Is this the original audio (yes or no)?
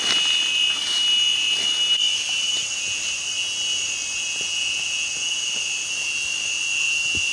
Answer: yes